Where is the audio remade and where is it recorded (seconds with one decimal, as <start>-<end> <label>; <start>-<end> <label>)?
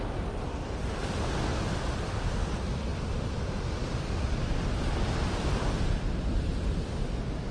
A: 0.0-7.5 recorded